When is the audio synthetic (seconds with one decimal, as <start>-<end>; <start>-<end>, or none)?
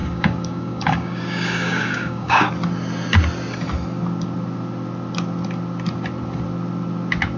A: 0.0-2.5